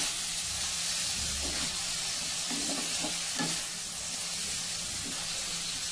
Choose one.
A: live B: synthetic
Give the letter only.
A